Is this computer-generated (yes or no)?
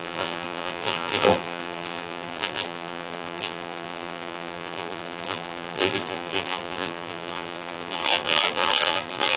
yes